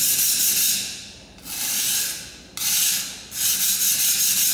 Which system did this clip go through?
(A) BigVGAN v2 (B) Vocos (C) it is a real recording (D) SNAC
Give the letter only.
C